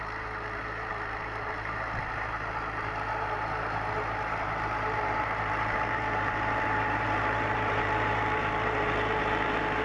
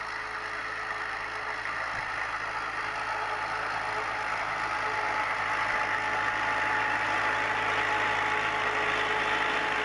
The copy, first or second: first